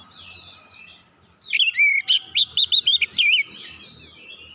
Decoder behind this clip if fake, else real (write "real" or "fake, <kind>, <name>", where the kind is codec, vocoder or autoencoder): real